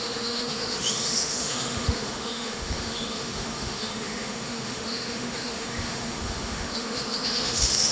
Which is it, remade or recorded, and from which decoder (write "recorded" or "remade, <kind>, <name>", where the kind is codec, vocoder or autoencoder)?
remade, autoencoder, DAC-VAE